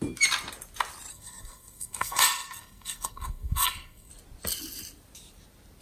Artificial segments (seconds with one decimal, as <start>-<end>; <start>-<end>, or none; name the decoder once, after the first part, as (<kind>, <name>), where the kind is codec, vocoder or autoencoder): 1.1-4.1 (codec, SNAC)